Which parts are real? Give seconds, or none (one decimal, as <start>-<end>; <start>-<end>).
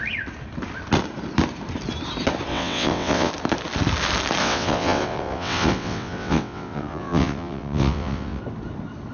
0.0-2.5; 3.3-4.4; 8.4-9.1